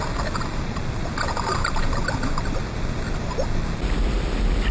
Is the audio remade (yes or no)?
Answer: no